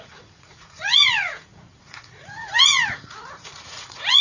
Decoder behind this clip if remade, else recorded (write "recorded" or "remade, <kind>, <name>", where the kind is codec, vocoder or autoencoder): remade, vocoder, Vocos